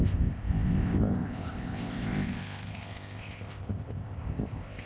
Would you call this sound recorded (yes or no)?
no